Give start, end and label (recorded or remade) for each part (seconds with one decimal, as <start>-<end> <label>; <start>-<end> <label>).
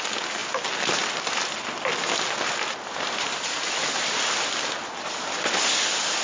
0.0-6.2 recorded